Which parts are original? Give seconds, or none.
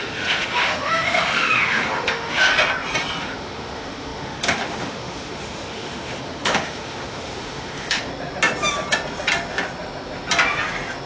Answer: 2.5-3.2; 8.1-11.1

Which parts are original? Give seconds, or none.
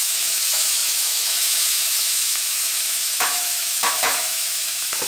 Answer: none